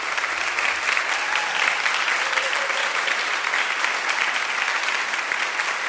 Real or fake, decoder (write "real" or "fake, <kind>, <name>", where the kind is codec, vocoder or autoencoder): real